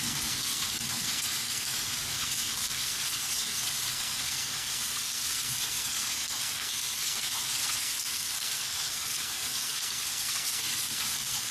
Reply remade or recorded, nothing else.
remade